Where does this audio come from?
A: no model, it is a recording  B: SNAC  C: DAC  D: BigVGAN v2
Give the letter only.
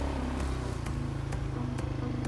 A